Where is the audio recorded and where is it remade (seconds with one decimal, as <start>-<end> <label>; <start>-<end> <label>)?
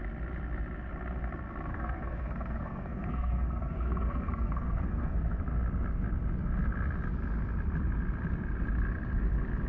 0.0-1.7 recorded; 1.7-5.4 remade; 5.4-9.7 recorded